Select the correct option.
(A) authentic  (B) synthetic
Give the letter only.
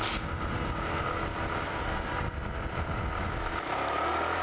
A